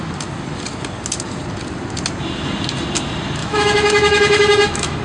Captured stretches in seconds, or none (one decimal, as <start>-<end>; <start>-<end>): 0.0-3.4